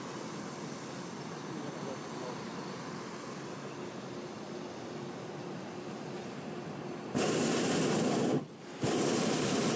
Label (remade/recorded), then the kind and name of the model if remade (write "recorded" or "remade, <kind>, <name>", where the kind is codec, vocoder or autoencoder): recorded